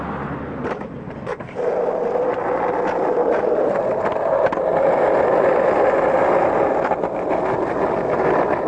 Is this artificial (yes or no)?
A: no